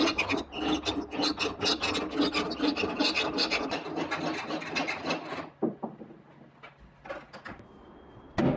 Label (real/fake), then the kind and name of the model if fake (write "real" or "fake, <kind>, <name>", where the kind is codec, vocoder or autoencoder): real